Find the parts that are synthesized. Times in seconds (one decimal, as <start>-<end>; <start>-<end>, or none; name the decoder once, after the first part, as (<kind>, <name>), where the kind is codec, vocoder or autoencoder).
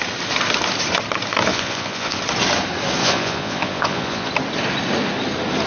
1.5-2.2 (vocoder, Vocos); 3.0-4.3